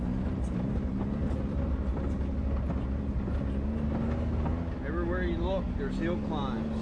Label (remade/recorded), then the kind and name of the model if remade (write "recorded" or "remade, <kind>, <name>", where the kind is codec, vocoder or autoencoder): recorded